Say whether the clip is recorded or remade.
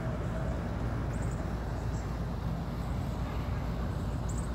recorded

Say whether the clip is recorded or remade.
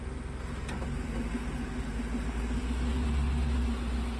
recorded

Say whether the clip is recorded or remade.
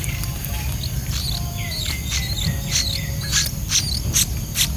recorded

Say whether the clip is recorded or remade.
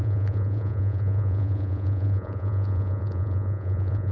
remade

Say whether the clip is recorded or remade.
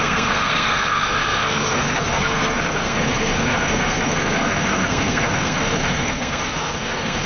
remade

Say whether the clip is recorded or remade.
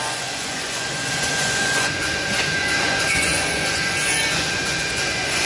remade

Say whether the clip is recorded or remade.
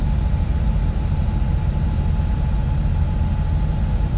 recorded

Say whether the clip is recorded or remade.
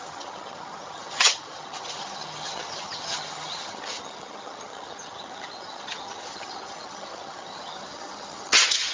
remade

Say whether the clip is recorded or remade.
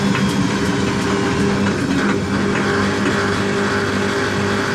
recorded